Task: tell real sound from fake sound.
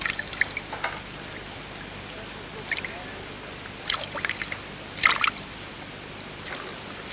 real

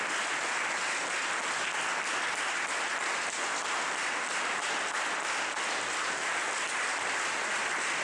real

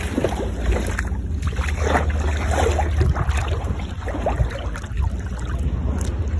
real